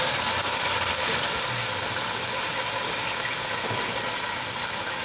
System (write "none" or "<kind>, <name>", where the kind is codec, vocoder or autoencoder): none